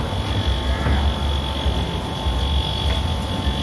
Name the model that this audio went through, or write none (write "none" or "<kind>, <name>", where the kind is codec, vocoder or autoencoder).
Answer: none